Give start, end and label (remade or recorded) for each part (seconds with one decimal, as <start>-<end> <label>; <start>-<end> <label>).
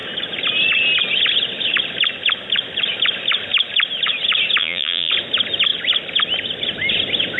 0.0-4.6 recorded; 4.6-5.1 remade; 5.1-7.4 recorded